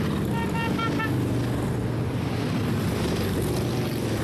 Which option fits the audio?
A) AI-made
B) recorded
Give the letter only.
B